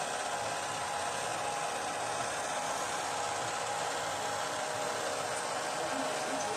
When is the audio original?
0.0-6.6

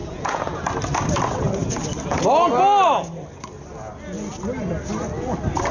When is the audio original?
0.6-5.7

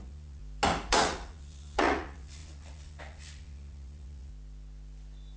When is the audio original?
0.4-0.9; 4.3-5.4

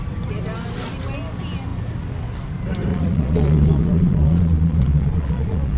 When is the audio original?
0.0-2.9

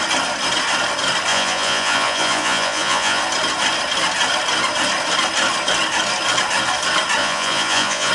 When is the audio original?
0.0-1.3; 3.2-7.2